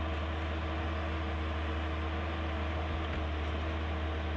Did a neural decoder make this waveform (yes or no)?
no